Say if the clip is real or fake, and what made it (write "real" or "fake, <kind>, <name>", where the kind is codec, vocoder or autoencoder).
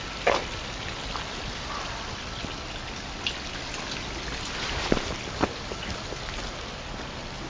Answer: real